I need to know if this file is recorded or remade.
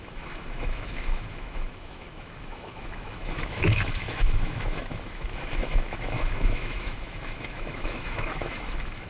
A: remade